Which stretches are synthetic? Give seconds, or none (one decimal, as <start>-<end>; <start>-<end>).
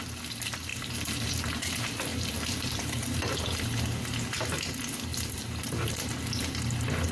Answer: 0.7-1.4; 2.1-3.2; 5.1-6.1